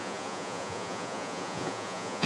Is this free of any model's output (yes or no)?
no